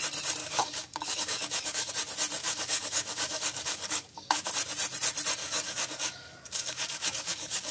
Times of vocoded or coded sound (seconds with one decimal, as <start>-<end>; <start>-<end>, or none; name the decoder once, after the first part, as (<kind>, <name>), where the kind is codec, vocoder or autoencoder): 0.4-1.9 (codec, DAC); 2.4-4.5; 5.4-7.7